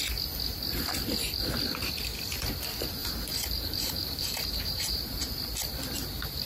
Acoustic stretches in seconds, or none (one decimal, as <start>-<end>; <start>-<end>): 0.0-3.0; 5.3-6.5